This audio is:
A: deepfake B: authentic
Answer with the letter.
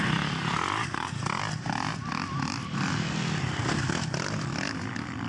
B